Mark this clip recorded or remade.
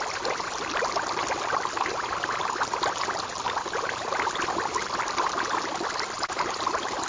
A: recorded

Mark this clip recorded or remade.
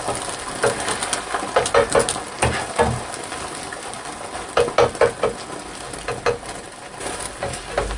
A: recorded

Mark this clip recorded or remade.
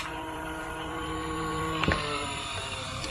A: remade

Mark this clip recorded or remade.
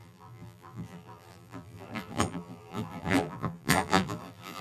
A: remade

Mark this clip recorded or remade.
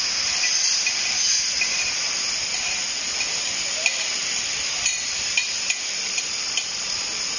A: remade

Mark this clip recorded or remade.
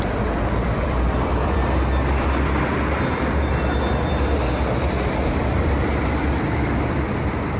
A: remade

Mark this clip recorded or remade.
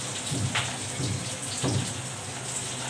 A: recorded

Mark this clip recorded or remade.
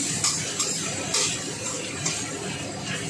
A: recorded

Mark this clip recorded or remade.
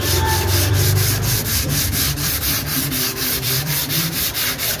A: remade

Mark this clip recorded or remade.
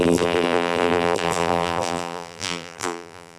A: remade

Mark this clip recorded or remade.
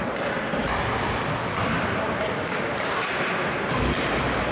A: recorded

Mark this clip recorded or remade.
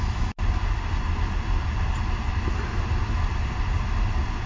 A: recorded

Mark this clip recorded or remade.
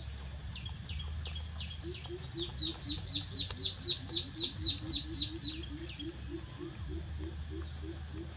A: recorded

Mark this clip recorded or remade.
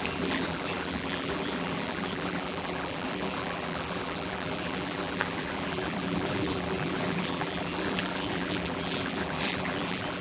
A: remade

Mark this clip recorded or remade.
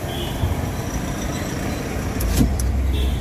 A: remade